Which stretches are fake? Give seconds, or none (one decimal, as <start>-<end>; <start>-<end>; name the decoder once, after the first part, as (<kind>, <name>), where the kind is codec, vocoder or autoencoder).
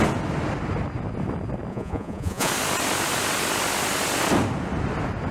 1.7-2.5 (vocoder, Vocos)